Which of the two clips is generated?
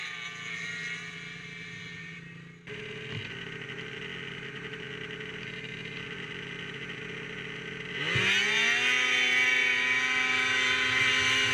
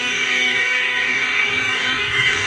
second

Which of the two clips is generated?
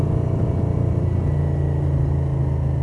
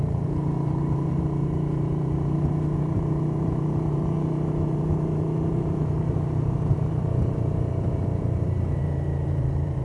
second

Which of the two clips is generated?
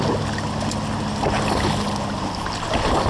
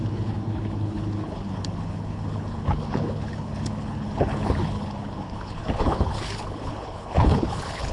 second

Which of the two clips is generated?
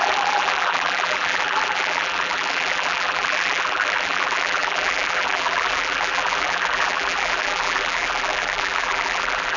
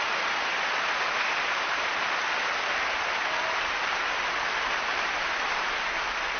first